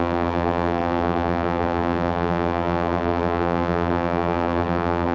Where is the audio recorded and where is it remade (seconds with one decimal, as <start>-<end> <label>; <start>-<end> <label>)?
0.0-5.1 remade